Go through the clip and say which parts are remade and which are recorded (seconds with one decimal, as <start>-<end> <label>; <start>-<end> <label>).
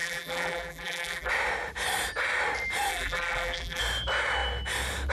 0.0-1.3 remade; 1.3-2.9 recorded; 2.9-3.8 remade; 3.8-5.1 recorded